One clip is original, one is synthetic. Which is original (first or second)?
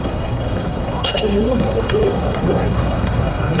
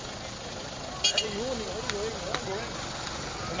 second